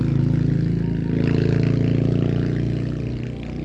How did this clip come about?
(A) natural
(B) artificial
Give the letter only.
A